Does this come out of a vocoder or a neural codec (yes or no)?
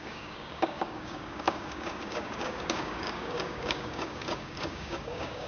yes